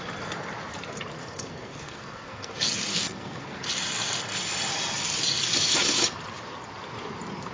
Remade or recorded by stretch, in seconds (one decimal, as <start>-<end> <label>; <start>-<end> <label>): 0.0-1.2 recorded; 1.2-2.5 remade; 2.5-2.9 recorded; 2.9-3.6 remade; 3.6-7.5 recorded